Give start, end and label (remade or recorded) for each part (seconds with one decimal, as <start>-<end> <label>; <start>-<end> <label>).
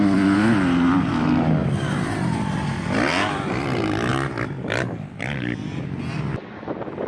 0.0-7.1 recorded